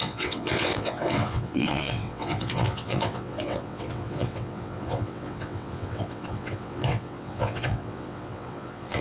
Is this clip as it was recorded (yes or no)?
no